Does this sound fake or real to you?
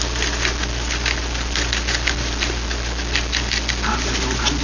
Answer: real